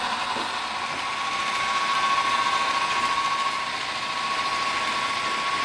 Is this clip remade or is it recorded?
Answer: recorded